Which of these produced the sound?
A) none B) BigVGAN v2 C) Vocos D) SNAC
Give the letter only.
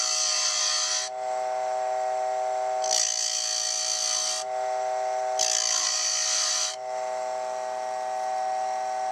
A